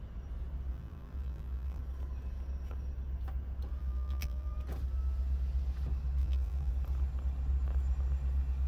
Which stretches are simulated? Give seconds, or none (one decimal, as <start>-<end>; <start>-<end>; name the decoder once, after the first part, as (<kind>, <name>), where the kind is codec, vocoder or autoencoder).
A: 0.7-1.8 (vocoder, BigVGAN v2); 3.8-4.5; 6.2-6.7